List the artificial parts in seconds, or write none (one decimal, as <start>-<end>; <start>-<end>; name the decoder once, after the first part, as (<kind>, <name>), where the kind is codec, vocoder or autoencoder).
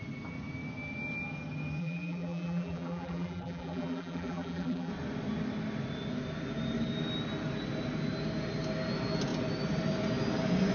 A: 1.8-4.9 (vocoder, BigVGAN v2)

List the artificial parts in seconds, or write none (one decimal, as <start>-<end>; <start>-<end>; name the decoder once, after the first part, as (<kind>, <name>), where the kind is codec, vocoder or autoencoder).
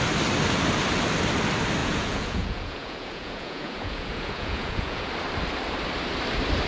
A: 1.8-5.1 (vocoder, Vocos)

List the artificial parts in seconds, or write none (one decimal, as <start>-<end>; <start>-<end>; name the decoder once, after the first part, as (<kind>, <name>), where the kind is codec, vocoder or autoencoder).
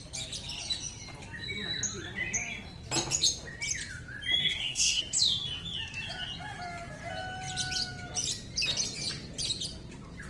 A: 4.4-5.0 (codec, SNAC)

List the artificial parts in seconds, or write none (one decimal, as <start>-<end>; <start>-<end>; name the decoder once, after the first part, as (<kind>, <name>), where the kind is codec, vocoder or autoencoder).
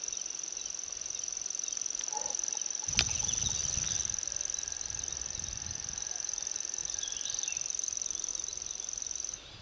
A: 6.8-8.3 (vocoder, BigVGAN v2)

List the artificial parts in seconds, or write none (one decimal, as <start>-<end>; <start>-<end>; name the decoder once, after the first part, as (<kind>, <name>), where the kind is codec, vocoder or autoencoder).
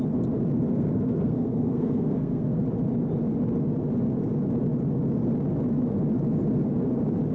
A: 0.7-2.6 (codec, SNAC)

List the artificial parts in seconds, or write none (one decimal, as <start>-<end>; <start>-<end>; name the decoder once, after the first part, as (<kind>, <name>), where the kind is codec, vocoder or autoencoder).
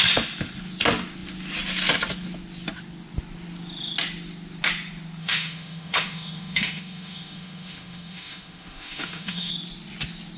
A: 5.2-9.5 (autoencoder, DAC-VAE)